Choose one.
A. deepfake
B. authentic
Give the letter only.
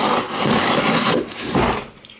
B